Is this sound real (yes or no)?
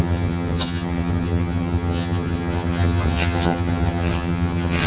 no